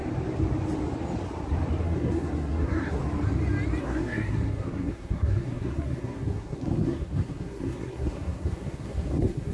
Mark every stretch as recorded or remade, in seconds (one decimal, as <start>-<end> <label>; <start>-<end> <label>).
0.0-1.8 recorded; 1.8-3.0 remade; 3.0-3.8 recorded; 3.8-9.5 remade